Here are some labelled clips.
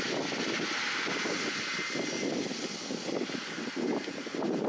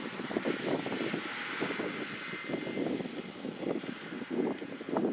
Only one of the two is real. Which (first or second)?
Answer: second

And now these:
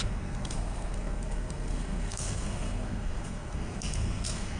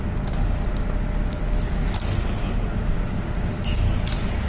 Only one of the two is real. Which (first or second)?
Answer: second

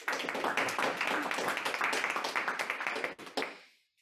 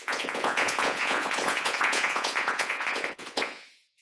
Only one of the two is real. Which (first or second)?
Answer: first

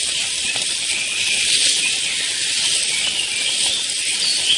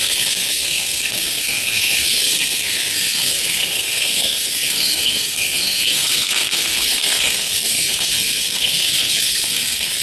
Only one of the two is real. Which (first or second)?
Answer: first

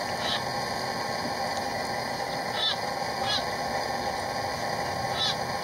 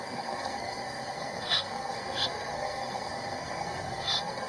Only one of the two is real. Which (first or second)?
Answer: first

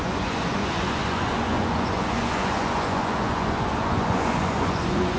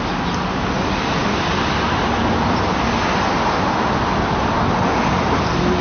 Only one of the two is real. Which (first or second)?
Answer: second